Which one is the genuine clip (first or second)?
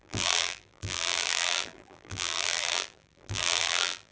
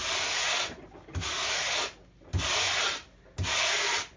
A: second